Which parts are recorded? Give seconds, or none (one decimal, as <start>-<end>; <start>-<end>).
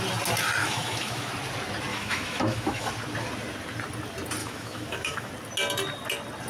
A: 0.0-0.6; 1.3-1.9; 2.9-4.4; 5.3-6.5